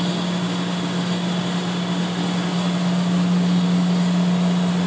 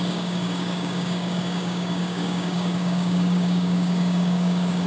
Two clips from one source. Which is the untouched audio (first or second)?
first